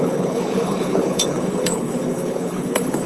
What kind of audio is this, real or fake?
fake